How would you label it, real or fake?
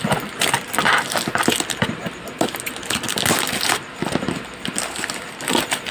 real